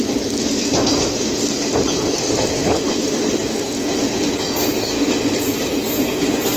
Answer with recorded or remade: recorded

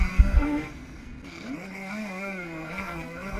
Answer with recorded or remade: remade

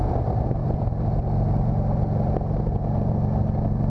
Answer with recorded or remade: recorded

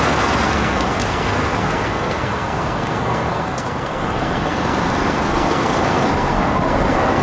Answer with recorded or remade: remade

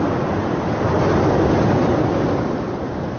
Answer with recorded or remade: recorded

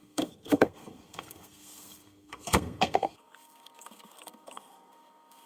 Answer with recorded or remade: remade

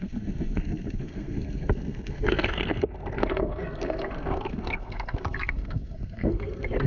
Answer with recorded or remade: remade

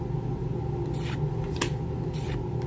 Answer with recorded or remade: recorded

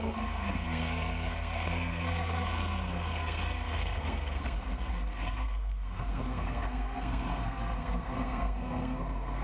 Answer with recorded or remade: remade